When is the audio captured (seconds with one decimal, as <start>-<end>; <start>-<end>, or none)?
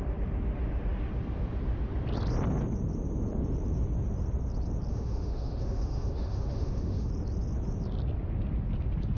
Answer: 0.0-4.9; 7.1-9.2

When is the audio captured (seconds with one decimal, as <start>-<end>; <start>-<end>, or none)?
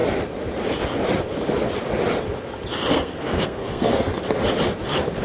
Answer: 0.0-2.9; 4.1-5.2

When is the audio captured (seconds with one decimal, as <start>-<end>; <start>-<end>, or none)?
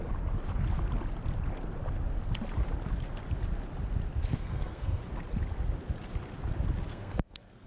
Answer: 0.0-4.2; 5.0-6.9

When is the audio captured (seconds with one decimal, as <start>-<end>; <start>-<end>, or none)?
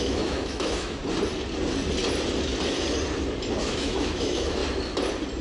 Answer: 1.0-3.6; 4.6-5.4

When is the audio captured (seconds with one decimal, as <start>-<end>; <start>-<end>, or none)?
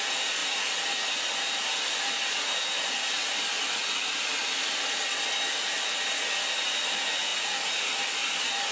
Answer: 0.0-8.7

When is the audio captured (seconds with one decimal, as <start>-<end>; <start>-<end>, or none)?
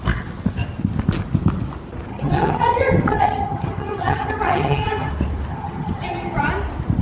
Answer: 0.0-2.1; 5.1-5.5; 6.5-7.0